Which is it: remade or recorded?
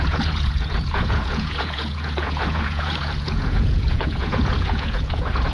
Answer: remade